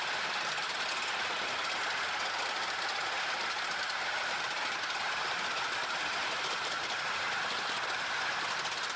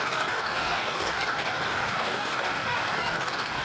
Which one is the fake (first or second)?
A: second